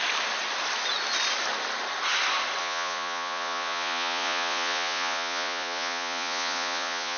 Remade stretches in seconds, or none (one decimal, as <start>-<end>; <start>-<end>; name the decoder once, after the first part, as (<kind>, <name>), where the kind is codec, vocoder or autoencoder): 2.6-7.2 (vocoder, Vocos)